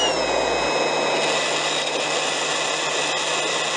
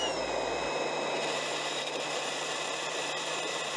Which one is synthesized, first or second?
second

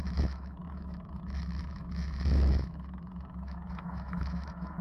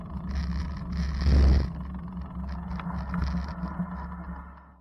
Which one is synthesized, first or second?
first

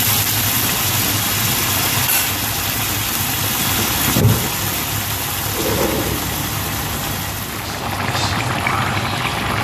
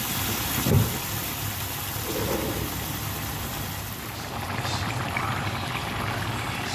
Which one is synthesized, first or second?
second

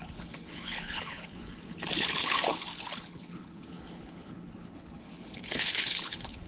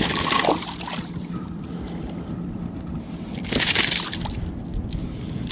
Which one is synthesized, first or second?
first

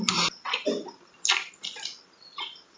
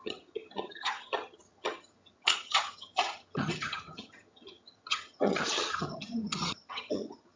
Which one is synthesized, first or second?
second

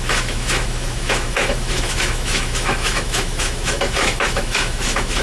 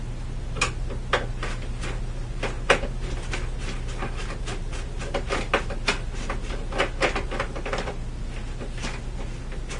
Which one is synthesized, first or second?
first